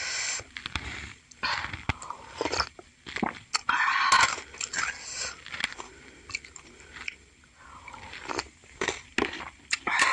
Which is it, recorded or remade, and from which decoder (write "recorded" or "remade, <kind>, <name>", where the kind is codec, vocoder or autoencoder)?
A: recorded